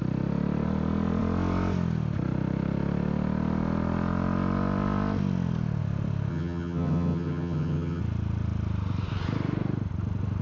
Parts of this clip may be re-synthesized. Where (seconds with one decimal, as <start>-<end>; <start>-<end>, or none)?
6.3-8.0

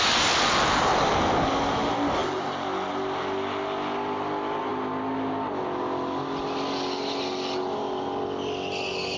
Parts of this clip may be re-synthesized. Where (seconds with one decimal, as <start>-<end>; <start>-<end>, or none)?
none

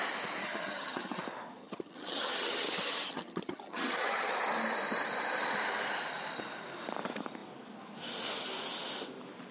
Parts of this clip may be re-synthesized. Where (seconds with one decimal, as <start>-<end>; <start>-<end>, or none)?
0.4-1.2; 1.6-4.3